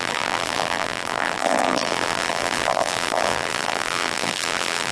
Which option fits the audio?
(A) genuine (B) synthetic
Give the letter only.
B